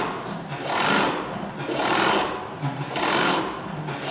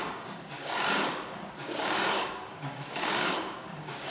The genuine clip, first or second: first